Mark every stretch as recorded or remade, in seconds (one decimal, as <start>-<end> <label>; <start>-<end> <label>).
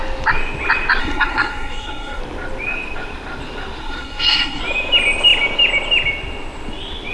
0.0-1.0 recorded; 1.0-2.2 remade; 2.2-3.8 recorded; 3.8-4.6 remade; 4.6-7.1 recorded